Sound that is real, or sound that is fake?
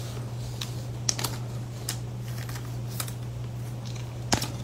real